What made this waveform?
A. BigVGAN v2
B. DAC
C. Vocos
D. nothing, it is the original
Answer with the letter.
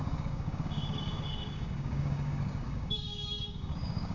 B